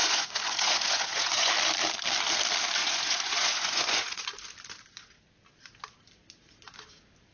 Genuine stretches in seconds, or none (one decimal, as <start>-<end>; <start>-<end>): 1.5-2.8; 4.2-7.3